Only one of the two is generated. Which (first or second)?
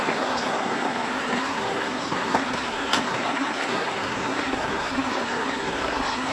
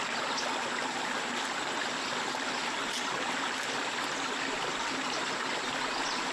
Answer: first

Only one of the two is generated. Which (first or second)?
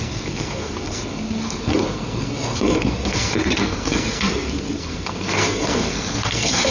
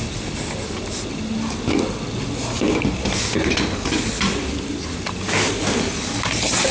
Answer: first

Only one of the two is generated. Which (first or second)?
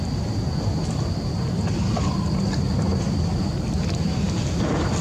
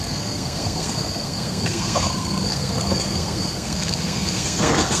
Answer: second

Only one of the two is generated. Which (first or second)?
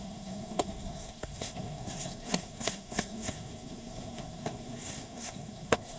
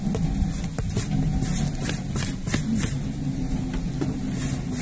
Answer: first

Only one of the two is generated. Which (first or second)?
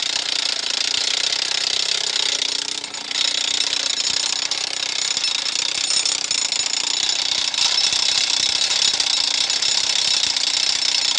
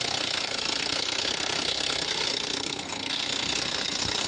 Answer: second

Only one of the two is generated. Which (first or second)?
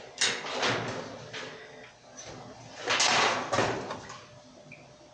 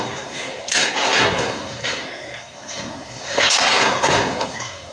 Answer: second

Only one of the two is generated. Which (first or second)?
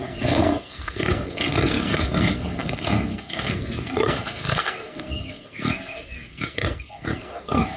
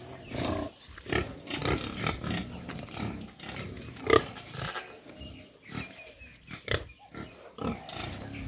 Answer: first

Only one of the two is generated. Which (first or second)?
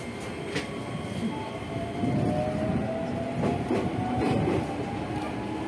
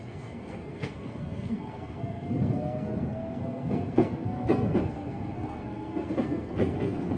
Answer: second